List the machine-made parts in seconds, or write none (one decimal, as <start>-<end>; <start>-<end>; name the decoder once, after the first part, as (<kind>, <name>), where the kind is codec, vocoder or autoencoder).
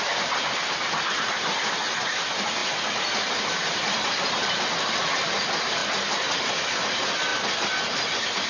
none